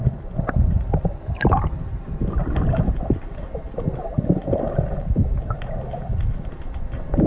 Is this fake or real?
real